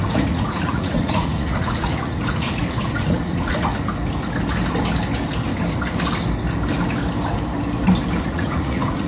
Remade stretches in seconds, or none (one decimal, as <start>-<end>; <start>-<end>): 0.0-3.7; 8.2-9.1